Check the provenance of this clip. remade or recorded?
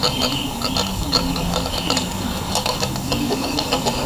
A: remade